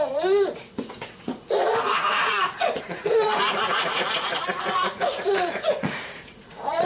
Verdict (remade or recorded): remade